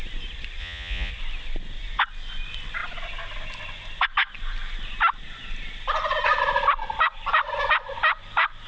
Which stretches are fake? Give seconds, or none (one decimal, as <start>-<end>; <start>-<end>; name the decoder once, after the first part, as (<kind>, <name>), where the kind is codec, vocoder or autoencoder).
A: 0.6-1.1 (vocoder, Vocos)

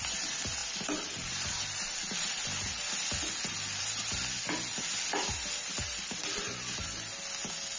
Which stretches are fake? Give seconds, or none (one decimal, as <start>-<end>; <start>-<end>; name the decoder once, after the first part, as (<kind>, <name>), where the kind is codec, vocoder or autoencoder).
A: none

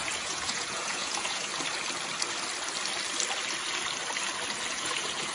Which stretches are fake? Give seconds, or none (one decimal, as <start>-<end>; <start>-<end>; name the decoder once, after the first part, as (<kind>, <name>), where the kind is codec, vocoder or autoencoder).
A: 0.0-1.5 (vocoder, Vocos); 4.7-5.3

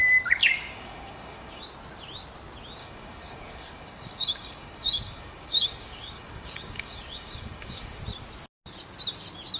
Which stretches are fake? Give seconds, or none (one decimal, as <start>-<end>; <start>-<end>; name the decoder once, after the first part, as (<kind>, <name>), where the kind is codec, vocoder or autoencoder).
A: 0.4-1.6 (codec, DAC); 2.8-8.0

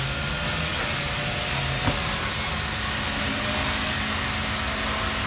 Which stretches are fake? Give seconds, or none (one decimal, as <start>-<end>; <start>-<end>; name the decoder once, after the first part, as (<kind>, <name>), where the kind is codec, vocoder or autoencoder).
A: none